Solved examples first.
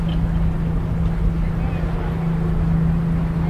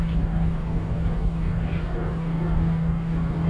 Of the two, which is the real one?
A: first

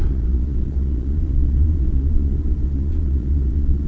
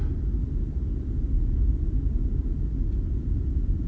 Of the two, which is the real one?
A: second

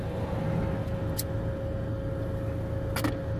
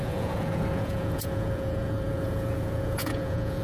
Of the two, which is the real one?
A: first